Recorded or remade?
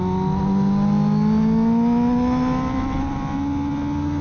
recorded